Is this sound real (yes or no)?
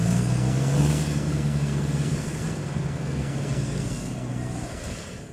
no